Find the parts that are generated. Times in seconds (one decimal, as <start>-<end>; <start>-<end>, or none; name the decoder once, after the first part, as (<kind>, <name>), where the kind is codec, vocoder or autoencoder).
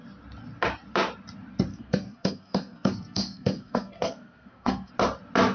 1.7-4.9 (codec, SNAC)